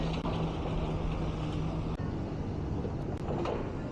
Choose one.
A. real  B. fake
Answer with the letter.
A